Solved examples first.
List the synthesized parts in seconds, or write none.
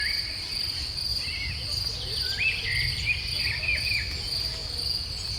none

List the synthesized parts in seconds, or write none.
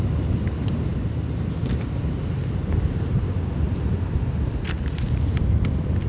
none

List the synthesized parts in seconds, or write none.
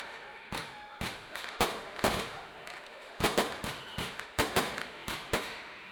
0.0-5.9 (autoencoder, DAC-VAE)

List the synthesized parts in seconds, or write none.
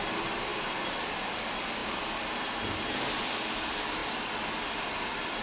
0.0-0.5 (vocoder, BigVGAN v2); 1.3-5.4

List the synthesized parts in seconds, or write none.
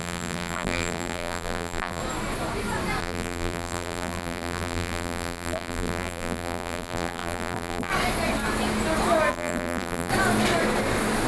0.0-2.0 (vocoder, BigVGAN v2); 3.0-7.9; 9.3-10.1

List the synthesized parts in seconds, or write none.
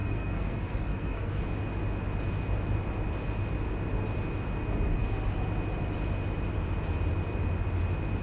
0.0-1.4 (codec, SNAC)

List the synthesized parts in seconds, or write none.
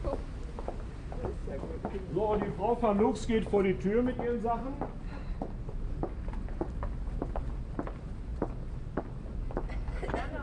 none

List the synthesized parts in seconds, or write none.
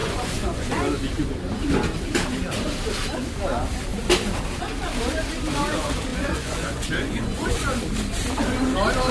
0.0-0.7 (vocoder, Vocos); 6.1-7.8